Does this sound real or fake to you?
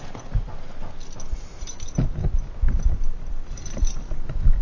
real